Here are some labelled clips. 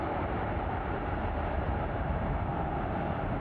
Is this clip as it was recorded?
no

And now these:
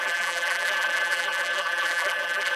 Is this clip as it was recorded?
no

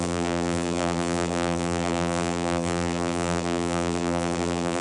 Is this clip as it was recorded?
no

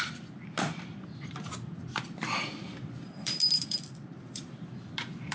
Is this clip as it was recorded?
no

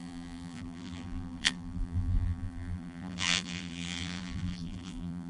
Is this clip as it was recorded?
no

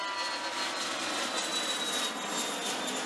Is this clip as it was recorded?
yes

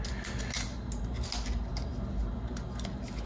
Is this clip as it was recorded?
yes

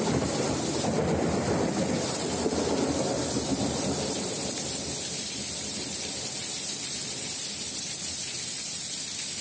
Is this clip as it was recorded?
no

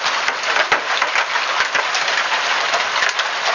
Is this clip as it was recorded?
yes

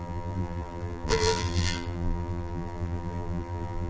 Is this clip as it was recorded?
no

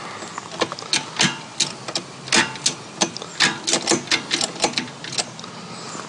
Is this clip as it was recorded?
yes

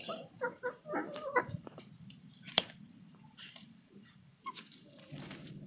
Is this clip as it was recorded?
no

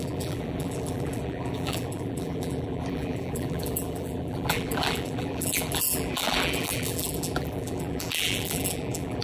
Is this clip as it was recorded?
no